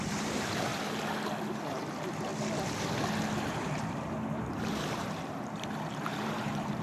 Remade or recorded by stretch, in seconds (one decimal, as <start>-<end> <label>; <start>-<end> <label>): 0.0-0.7 remade; 0.7-1.5 recorded; 1.5-2.3 remade; 2.3-3.5 recorded; 3.5-6.8 remade